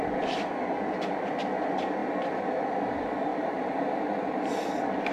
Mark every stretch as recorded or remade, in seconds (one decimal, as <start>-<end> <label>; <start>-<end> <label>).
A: 0.0-2.0 remade; 2.0-2.6 recorded; 2.6-5.1 remade